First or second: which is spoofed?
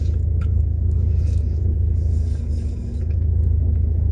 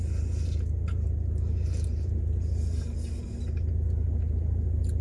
first